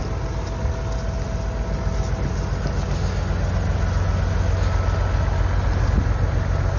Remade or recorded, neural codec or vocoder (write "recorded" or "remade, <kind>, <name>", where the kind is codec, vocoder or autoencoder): recorded